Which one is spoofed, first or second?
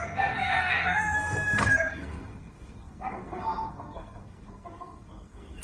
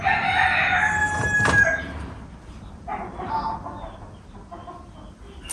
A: first